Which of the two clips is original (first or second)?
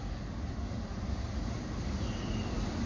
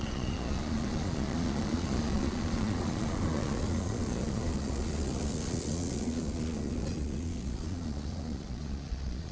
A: first